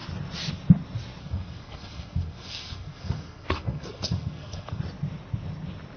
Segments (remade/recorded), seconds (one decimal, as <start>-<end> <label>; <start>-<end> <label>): 0.0-1.2 recorded; 1.2-4.8 remade; 4.8-6.0 recorded